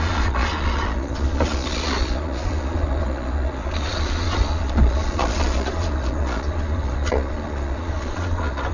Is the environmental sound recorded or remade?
remade